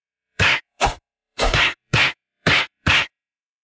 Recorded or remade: remade